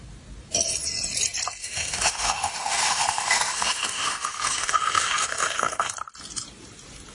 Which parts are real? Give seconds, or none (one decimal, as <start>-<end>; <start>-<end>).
0.0-1.6; 5.9-7.1